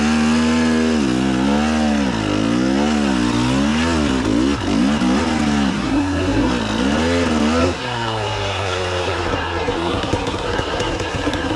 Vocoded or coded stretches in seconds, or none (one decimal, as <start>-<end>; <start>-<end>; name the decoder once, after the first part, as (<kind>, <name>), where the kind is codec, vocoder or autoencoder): 5.7-6.5 (codec, SNAC); 7.6-11.6